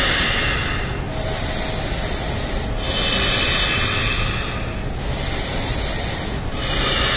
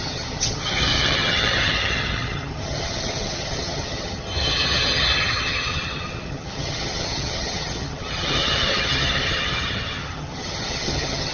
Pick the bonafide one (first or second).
first